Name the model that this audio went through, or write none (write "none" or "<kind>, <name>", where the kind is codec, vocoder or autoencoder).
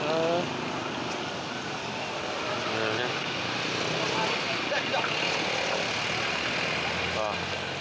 none